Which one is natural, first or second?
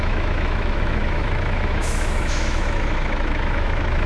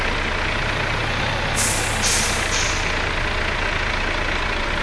second